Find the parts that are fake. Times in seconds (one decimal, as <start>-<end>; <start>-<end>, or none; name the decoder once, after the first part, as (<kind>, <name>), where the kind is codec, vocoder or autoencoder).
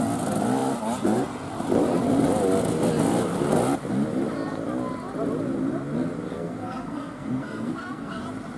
6.3-8.2 (codec, SNAC)